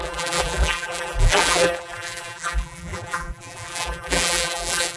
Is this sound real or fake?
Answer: fake